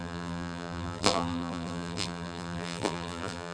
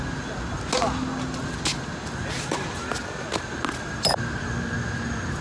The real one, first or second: second